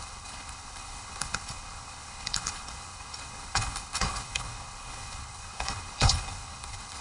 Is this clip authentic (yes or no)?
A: no